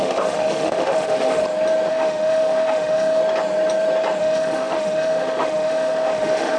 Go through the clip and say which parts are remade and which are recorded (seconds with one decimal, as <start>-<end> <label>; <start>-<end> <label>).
0.0-1.4 remade; 1.4-1.9 recorded; 1.9-3.2 remade; 3.2-4.2 recorded; 4.2-6.6 remade